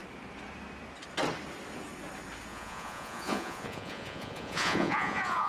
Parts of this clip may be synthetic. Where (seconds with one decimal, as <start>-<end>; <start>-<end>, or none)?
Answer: 2.5-5.5

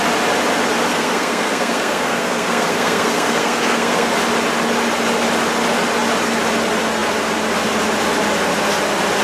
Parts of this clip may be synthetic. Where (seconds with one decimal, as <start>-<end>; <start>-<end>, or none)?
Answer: 0.9-4.1

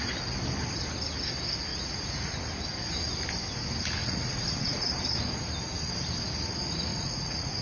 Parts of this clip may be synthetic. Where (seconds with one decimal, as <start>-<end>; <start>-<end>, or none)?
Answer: 1.7-2.5; 4.0-4.9; 6.9-7.6

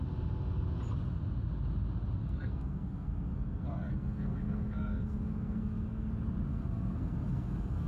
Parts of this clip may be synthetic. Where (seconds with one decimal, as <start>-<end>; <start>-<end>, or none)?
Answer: 2.2-6.1; 6.5-7.9

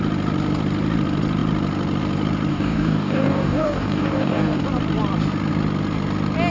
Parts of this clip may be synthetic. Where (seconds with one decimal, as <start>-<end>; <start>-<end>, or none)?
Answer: 2.5-4.6